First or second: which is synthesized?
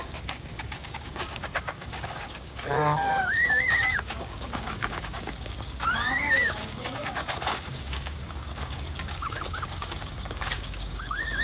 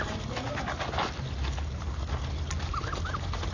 first